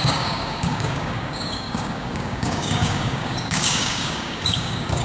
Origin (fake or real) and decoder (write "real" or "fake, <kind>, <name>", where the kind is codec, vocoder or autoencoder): fake, codec, DAC